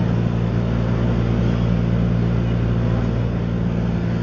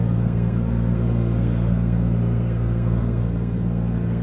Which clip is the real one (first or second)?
first